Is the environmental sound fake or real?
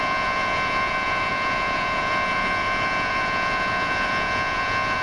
fake